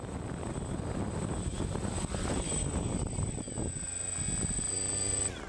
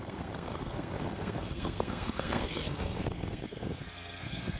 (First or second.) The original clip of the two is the first